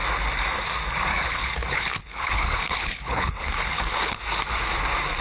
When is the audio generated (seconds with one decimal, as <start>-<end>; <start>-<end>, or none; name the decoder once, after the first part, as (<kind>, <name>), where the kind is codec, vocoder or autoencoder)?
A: 1.1-4.2 (codec, HILCodec)